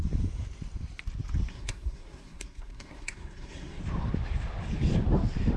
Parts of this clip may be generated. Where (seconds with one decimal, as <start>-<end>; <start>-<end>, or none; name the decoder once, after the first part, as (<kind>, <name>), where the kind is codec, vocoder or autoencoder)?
1.5-3.8 (codec, SNAC)